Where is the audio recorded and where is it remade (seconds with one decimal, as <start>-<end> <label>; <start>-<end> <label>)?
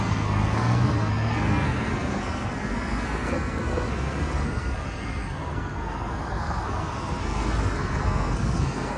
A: 0.0-9.0 remade